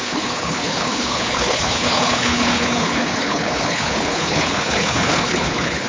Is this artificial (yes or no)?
yes